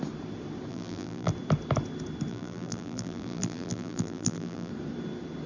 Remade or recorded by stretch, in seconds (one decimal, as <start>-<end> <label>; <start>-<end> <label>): 0.0-0.7 recorded; 0.7-1.3 remade; 1.3-2.3 recorded; 2.3-4.7 remade; 4.7-5.5 recorded